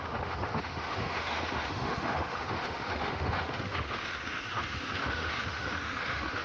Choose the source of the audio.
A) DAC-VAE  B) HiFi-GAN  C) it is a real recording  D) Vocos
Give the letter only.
A